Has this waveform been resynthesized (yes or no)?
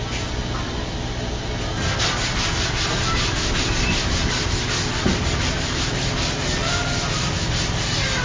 no